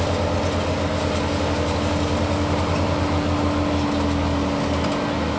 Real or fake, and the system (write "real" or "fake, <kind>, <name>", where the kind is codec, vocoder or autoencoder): real